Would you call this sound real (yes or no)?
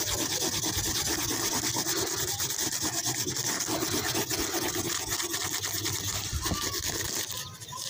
yes